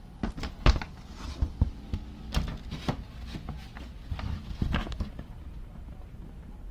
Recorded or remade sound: recorded